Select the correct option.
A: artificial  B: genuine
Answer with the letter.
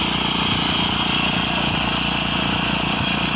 B